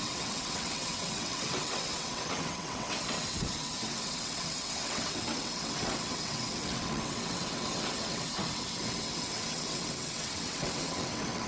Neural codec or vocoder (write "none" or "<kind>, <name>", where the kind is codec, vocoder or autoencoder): vocoder, WaveNeXt